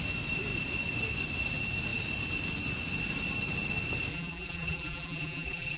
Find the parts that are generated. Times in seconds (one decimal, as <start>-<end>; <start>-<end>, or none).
4.1-5.8